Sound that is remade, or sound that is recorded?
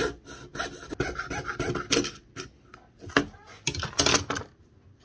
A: recorded